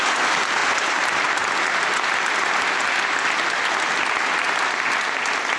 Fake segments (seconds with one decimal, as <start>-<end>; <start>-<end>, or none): none